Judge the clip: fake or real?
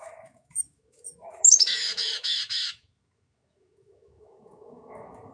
fake